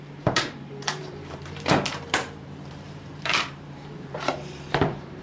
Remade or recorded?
remade